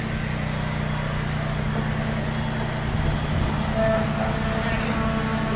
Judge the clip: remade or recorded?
recorded